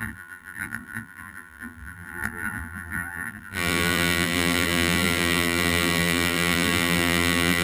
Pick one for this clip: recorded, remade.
remade